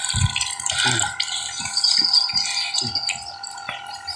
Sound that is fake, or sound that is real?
real